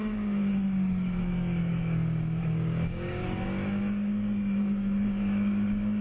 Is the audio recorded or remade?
remade